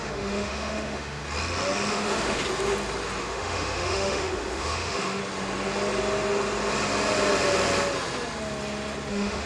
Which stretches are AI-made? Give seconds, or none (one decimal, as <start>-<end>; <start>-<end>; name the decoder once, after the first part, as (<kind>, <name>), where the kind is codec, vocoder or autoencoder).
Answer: 0.0-1.2 (autoencoder, DAC-VAE); 1.9-2.4; 3.2-5.2; 9.1-9.5